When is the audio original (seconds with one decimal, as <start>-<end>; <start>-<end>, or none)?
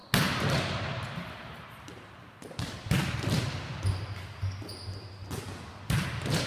0.0-6.5